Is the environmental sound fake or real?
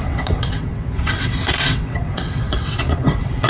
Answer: fake